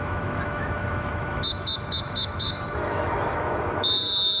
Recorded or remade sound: remade